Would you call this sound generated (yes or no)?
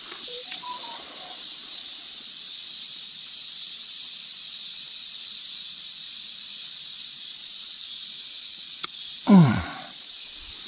yes